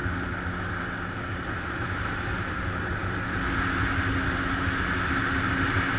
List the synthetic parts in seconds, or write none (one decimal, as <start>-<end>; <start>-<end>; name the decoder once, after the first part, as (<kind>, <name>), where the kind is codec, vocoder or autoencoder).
none